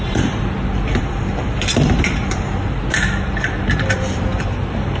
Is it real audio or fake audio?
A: fake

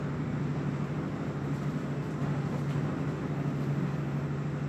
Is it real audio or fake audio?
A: real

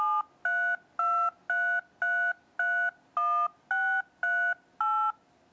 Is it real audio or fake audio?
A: real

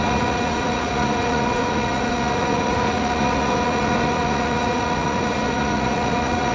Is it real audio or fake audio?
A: fake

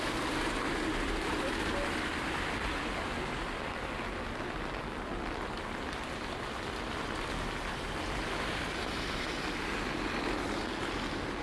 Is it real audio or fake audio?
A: real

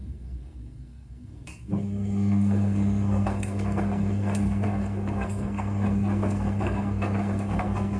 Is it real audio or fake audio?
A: fake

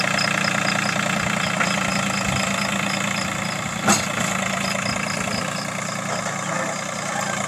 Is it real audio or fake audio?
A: real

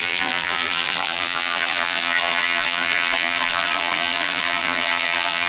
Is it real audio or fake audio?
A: fake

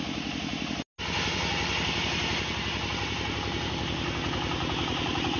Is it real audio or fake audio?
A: real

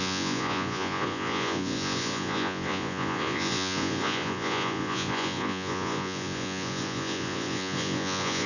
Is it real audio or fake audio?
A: fake